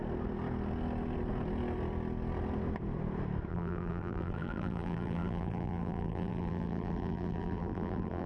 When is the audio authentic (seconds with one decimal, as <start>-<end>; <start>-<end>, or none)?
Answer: 0.0-3.5